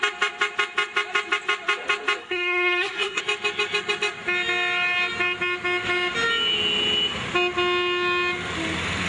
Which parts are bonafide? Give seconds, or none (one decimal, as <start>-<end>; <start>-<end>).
0.0-2.2; 3.2-9.1